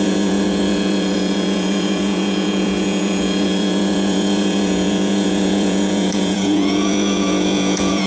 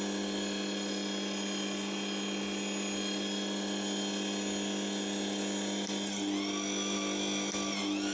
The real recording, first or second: second